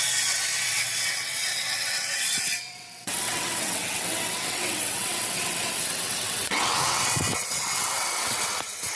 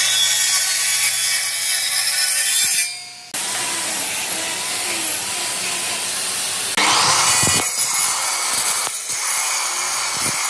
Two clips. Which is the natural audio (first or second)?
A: second